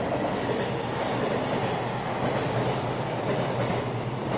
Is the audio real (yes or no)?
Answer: yes